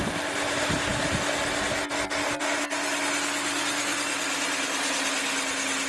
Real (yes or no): yes